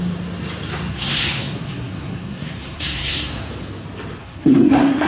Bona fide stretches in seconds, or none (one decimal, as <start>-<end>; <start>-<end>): 0.0-0.9; 3.5-4.2

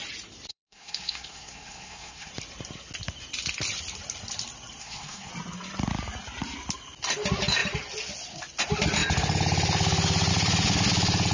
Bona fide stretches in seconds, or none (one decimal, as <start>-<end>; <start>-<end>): 0.0-0.5; 2.3-4.8; 5.3-11.3

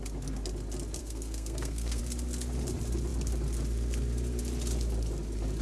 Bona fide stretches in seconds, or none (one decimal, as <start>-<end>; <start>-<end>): 0.0-1.0; 2.0-5.6